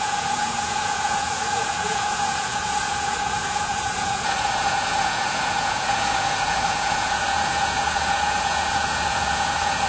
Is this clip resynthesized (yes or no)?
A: yes